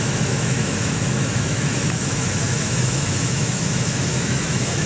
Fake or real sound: fake